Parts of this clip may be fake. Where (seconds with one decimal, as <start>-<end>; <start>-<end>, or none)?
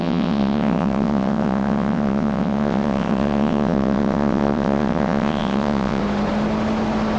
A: 0.0-6.0